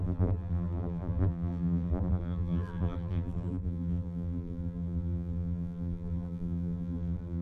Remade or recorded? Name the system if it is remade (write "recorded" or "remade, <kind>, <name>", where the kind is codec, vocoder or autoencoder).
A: remade, vocoder, BigVGAN v2